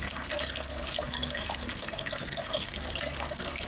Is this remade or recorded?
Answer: remade